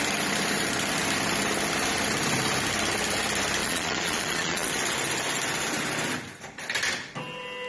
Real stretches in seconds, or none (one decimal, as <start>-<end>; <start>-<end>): 0.0-3.6; 4.7-7.7